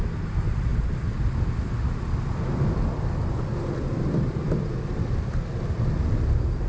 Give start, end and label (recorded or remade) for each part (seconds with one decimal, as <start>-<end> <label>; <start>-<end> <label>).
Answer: 0.0-3.5 recorded; 3.5-6.7 remade